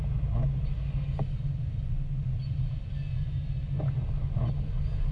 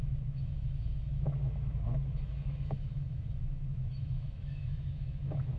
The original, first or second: first